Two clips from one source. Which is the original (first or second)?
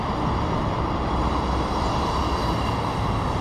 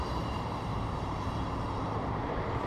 first